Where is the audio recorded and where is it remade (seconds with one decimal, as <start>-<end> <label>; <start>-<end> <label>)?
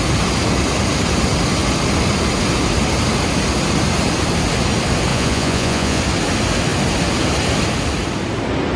0.0-5.1 recorded; 5.1-6.0 remade; 6.0-8.8 recorded